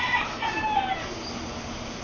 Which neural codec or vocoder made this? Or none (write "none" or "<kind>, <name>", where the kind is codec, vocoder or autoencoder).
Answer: vocoder, BigVGAN v2